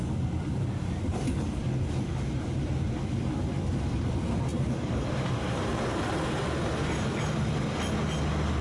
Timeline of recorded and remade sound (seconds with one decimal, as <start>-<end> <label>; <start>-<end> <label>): 0.0-4.5 recorded; 4.5-5.7 remade; 5.7-8.6 recorded